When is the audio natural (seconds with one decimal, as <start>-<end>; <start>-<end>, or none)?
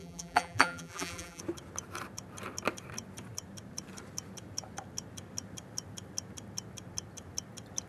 1.4-7.9